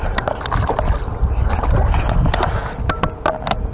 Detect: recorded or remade recorded